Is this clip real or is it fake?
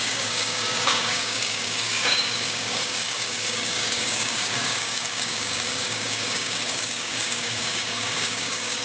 fake